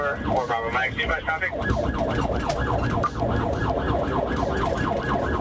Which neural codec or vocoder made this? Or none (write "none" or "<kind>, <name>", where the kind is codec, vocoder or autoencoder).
none